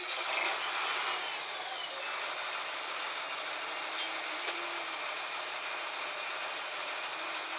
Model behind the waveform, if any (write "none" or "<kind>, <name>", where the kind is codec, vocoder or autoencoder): none